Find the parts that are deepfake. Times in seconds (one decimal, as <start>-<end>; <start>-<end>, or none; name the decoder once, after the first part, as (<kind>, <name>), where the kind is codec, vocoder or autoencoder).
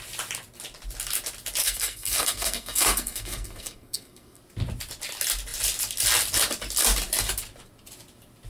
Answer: 1.6-4.4 (codec, SNAC)